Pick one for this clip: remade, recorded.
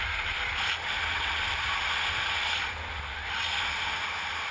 recorded